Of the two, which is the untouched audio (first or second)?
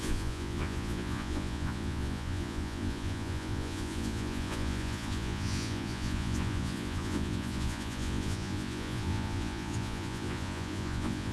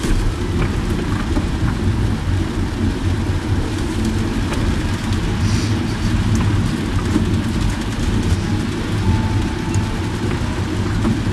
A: second